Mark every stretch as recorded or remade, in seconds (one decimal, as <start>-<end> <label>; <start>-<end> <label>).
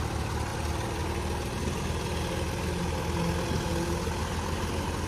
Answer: 0.0-0.5 recorded; 0.5-1.8 remade; 1.8-5.1 recorded